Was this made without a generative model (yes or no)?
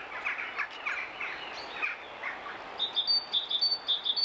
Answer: yes